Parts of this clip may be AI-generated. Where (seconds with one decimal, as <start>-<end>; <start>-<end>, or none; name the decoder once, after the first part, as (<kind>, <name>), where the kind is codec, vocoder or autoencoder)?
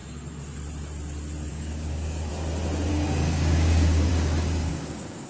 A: 1.5-2.3 (codec, DAC); 2.9-5.3